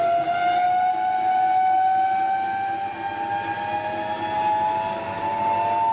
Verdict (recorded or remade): recorded